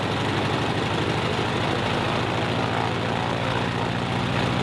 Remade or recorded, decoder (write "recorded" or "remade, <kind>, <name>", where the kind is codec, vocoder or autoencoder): recorded